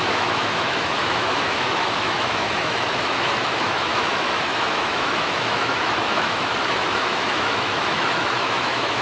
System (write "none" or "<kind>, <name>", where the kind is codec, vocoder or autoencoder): autoencoder, DAC-VAE